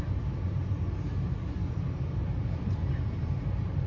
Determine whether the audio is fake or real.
real